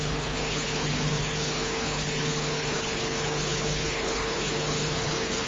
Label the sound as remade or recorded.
remade